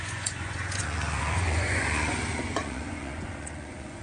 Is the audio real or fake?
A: fake